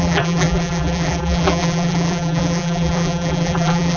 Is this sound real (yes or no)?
no